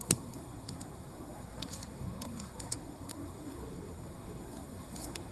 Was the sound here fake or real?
fake